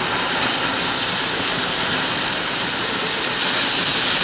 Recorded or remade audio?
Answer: recorded